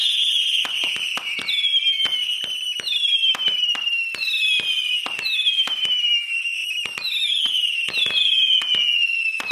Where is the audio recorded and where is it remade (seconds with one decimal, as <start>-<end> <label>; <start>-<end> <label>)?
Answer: 0.0-9.5 recorded